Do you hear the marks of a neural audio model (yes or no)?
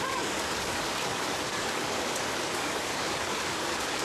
yes